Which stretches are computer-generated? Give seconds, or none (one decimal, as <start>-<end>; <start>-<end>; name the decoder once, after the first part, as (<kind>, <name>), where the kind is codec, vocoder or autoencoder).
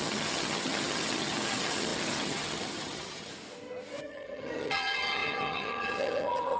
0.0-3.3 (vocoder, HiFi-GAN); 4.0-6.6